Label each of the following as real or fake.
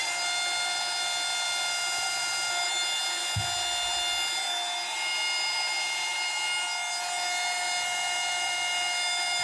real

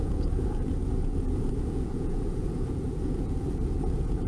fake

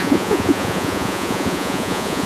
fake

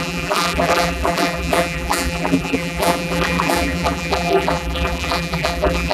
fake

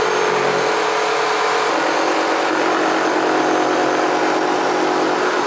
real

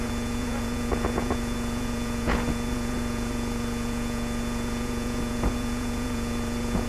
fake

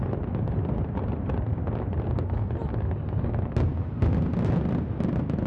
real